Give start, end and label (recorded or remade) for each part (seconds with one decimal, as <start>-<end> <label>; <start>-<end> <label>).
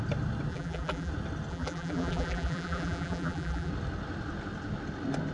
0.0-0.5 recorded; 0.5-1.1 remade; 1.1-1.5 recorded; 1.5-3.7 remade; 3.7-5.3 recorded